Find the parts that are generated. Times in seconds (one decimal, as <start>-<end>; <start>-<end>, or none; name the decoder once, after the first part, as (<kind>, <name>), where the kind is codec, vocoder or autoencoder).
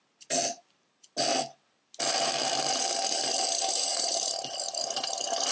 none